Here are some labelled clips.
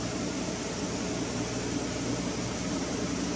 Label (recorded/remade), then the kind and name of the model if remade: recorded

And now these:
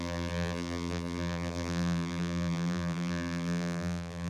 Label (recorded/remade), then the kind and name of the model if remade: remade, vocoder, BigVGAN v2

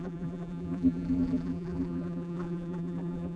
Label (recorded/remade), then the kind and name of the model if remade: remade, vocoder, BigVGAN v2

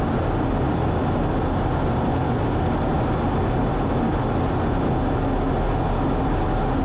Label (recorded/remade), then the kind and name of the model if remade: recorded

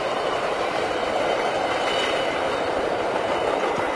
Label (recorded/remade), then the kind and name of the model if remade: remade, vocoder, BigVGAN v2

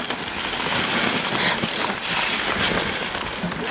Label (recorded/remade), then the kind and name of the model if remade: recorded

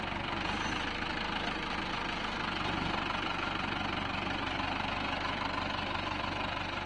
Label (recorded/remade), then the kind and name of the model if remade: recorded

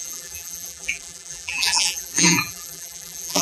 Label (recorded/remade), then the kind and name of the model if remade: remade, vocoder, BigVGAN v2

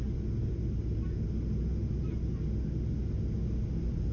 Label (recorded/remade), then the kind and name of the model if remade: recorded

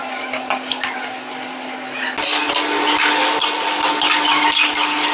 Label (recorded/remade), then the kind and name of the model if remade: recorded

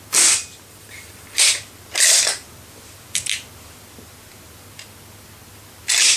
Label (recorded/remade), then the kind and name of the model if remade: recorded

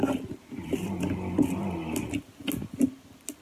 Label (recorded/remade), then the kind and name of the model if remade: recorded